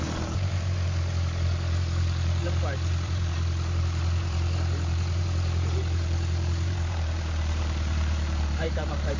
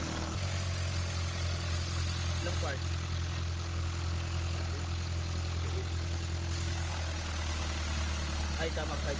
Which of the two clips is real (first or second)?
second